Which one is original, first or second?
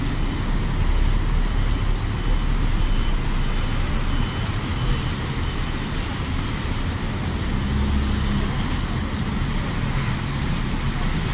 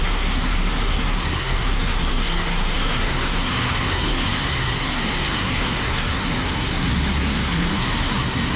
first